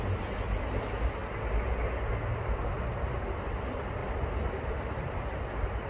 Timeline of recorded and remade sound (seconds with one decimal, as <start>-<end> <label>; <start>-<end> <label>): 0.0-4.0 recorded; 4.0-5.2 remade; 5.2-5.9 recorded